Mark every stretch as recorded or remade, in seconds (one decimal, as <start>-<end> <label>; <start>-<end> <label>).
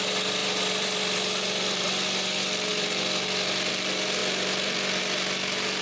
0.0-0.4 recorded; 0.4-1.9 remade; 1.9-2.7 recorded; 2.7-3.7 remade; 3.7-4.2 recorded; 4.2-5.0 remade; 5.0-5.8 recorded